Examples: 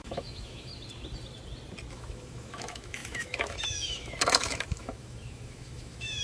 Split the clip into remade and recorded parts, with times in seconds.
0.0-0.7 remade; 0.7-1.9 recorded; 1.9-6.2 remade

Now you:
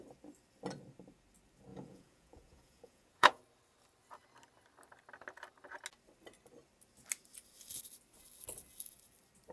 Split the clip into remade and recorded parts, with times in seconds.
0.0-1.7 recorded; 1.7-3.4 remade; 3.4-9.5 recorded